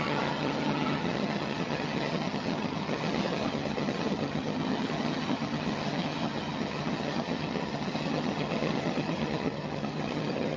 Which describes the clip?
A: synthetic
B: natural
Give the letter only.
A